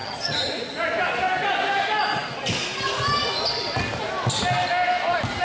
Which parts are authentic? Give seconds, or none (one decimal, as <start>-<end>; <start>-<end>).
0.5-5.4